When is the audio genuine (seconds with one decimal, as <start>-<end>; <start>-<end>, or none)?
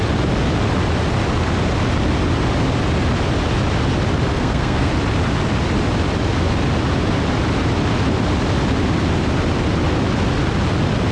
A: 0.0-4.3; 4.9-11.1